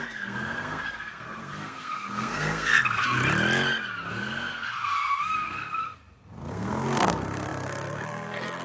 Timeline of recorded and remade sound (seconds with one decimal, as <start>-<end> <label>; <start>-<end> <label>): 0.0-3.2 remade; 3.2-4.1 recorded; 4.1-5.8 remade; 5.8-6.5 recorded; 6.5-8.6 remade